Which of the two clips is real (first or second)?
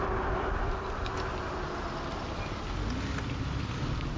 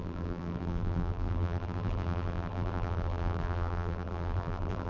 first